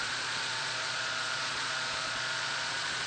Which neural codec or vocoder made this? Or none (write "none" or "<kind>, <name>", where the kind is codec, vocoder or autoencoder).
vocoder, Vocos